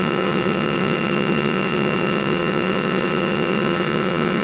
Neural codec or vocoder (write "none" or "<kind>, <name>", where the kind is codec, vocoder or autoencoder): vocoder, WaveNeXt